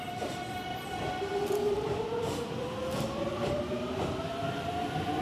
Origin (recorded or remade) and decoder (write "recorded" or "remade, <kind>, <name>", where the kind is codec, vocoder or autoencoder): remade, vocoder, BigVGAN v2